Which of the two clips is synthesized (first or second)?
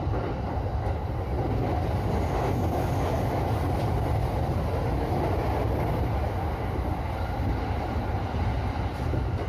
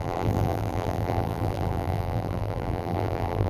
second